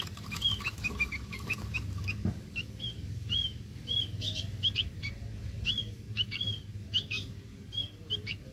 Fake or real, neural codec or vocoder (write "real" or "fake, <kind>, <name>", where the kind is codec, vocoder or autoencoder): fake, codec, DAC